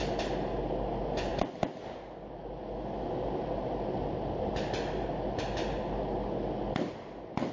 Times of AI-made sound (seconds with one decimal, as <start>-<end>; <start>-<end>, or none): none